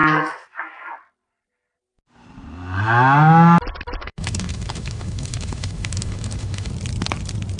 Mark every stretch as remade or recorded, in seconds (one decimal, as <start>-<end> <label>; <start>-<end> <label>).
0.0-4.0 recorded; 4.0-6.7 remade; 6.7-7.6 recorded